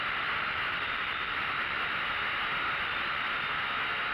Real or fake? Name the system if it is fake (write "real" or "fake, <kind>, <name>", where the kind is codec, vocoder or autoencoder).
real